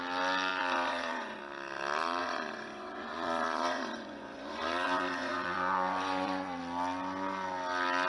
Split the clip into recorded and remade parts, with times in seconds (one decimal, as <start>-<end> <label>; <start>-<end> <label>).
0.0-0.5 recorded; 0.5-1.4 remade; 1.4-2.2 recorded; 2.2-6.6 remade; 6.6-8.1 recorded